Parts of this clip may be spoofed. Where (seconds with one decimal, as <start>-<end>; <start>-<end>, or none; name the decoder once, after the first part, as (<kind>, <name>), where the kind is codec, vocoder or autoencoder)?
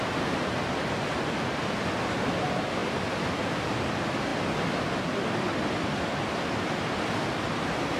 none